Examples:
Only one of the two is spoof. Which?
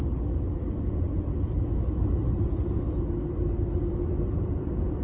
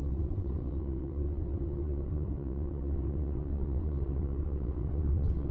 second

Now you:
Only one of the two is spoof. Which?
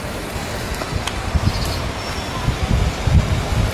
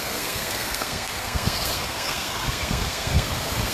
second